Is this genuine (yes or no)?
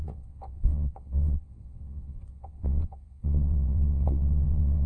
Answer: no